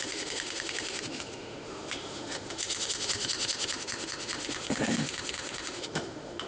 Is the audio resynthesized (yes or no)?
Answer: yes